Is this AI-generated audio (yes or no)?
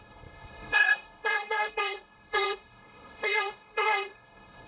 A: yes